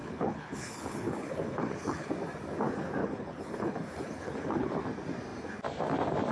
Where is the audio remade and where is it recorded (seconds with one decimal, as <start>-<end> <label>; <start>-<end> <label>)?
0.0-2.1 remade; 2.1-3.0 recorded; 3.0-4.7 remade; 4.7-6.3 recorded